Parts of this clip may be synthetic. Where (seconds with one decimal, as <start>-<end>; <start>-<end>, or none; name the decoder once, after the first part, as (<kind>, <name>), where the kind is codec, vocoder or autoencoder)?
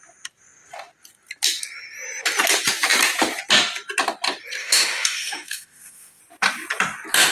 4.6-6.2 (autoencoder, DAC-VAE)